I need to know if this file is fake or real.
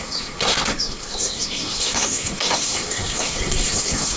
fake